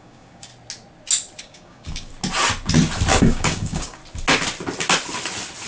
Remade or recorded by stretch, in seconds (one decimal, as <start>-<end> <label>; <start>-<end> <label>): 0.0-0.5 remade; 0.5-1.4 recorded; 1.4-2.1 remade; 2.1-3.2 recorded; 3.2-4.0 remade; 4.0-5.7 recorded

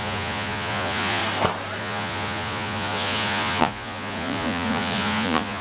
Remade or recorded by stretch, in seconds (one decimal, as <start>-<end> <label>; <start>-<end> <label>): 0.0-1.2 remade; 1.2-1.8 recorded; 1.8-5.6 remade

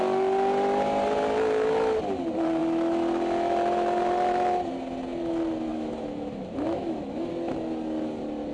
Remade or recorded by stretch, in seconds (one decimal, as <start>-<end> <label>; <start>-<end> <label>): 0.0-5.7 recorded; 5.7-7.3 remade; 7.3-8.5 recorded

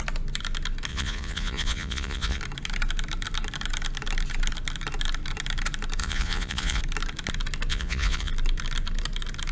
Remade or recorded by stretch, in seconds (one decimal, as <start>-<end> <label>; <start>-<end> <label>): 0.0-0.9 recorded; 0.9-2.4 remade; 2.4-6.0 recorded; 6.0-6.8 remade; 6.8-7.7 recorded; 7.7-8.3 remade; 8.3-9.5 recorded

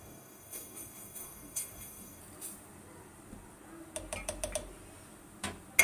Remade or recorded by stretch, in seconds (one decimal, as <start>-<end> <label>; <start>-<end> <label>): 0.0-2.2 remade; 2.2-5.8 recorded